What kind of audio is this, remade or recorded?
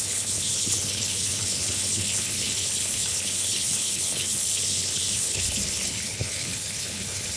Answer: remade